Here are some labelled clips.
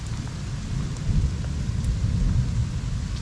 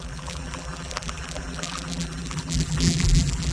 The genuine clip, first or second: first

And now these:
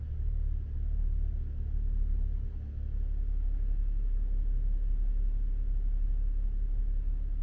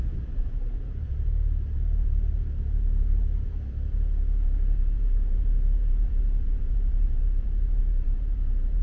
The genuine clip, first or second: first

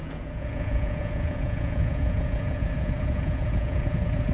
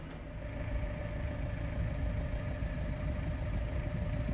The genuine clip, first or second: second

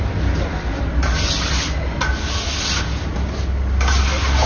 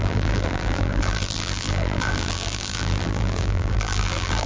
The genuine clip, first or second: first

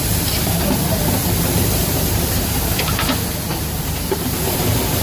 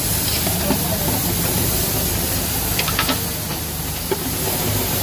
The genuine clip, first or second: second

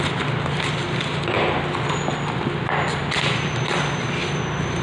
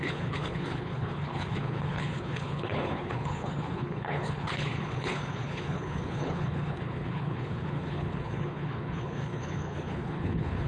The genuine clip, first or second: first